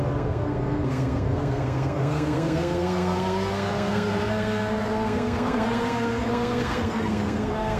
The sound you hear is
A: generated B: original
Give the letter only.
A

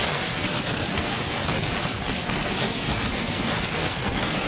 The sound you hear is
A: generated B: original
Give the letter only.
A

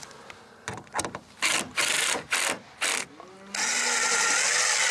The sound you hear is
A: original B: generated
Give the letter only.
A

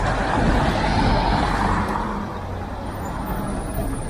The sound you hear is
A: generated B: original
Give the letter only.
B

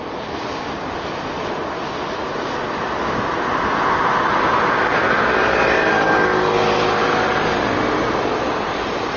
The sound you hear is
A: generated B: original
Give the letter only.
B